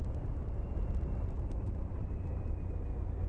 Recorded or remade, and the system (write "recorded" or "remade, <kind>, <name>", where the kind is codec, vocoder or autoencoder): remade, vocoder, BigVGAN v2